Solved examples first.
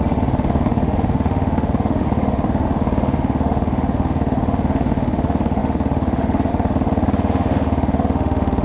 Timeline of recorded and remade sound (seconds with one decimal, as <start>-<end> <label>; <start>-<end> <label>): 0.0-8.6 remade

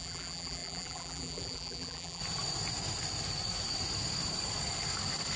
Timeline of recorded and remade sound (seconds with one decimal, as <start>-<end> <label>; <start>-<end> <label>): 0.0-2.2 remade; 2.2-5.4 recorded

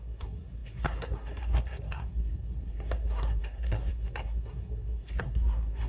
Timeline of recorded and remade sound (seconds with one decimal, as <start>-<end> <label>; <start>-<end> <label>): 0.0-5.9 remade

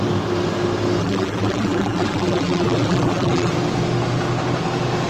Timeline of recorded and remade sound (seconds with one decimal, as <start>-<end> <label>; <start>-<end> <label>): 0.0-1.0 recorded; 1.0-3.5 remade; 3.5-5.1 recorded